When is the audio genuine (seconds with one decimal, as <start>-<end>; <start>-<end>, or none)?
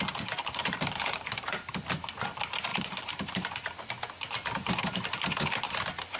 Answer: 0.0-0.6; 1.7-2.7; 3.5-4.6; 5.1-6.2